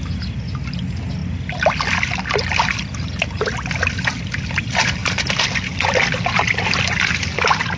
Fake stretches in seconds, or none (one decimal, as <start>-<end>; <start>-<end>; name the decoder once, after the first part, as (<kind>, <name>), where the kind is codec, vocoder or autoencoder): 5.0-7.8 (vocoder, BigVGAN v2)

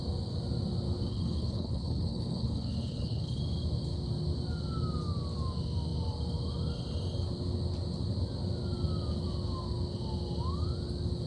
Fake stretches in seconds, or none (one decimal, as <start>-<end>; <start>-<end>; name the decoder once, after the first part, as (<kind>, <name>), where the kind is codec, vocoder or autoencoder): 1.1-3.4 (codec, HILCodec)